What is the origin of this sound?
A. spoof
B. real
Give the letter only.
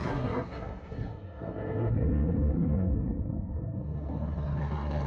A